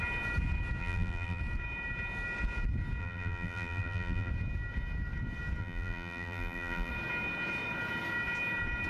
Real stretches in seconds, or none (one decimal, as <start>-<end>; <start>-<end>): 0.0-0.8; 1.4-3.0; 4.3-5.6; 6.9-8.9